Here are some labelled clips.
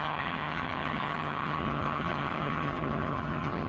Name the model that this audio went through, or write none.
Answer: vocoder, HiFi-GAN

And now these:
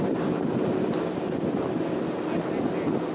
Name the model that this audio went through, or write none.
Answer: none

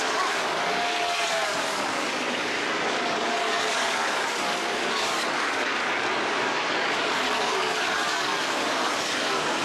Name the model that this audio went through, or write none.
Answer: codec, DAC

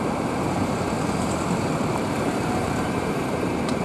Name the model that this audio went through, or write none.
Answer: vocoder, BigVGAN v2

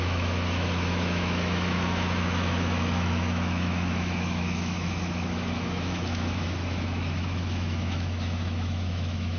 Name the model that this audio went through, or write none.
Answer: autoencoder, DAC-VAE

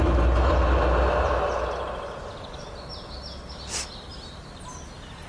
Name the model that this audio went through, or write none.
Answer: none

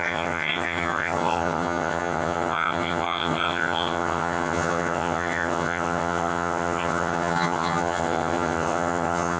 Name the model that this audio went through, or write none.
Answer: vocoder, HiFi-GAN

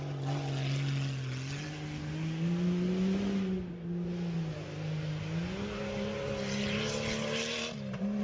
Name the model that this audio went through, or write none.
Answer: none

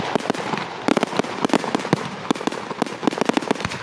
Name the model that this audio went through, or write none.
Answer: none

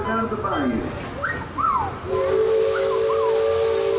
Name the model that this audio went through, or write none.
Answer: none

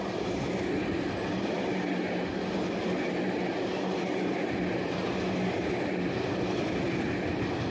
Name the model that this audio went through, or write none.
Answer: none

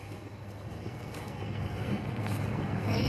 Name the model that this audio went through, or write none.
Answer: codec, SNAC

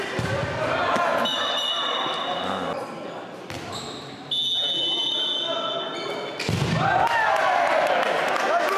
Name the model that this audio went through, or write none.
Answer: none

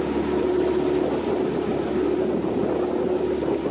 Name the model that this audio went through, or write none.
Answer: none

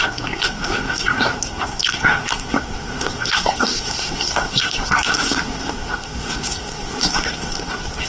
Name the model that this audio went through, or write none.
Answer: codec, SNAC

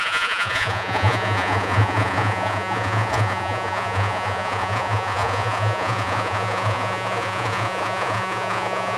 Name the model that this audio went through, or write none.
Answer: vocoder, Vocos